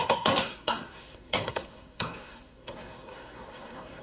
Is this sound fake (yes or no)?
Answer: yes